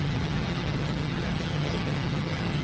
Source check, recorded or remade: remade